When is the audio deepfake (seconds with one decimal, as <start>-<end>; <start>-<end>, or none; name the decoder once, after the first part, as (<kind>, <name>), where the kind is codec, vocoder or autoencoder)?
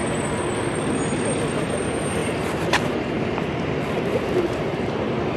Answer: 0.0-5.4 (vocoder, BigVGAN v2)